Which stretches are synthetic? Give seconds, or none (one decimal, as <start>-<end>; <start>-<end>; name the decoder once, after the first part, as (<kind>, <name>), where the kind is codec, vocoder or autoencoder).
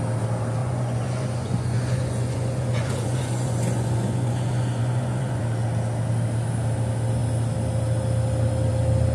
0.6-5.4 (vocoder, Vocos)